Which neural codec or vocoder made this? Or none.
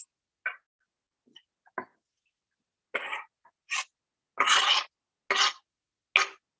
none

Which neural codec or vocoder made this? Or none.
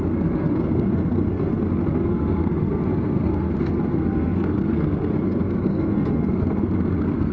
codec, SNAC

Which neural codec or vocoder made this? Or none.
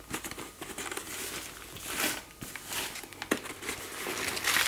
none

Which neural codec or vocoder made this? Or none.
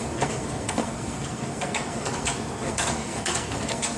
codec, SNAC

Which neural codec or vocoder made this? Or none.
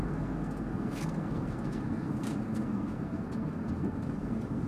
codec, SNAC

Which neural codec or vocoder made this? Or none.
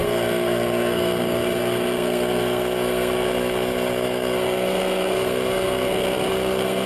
codec, SNAC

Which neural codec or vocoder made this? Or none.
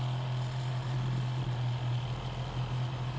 none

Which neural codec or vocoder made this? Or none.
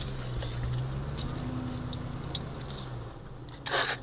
none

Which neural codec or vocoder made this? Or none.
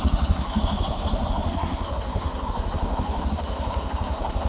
codec, SNAC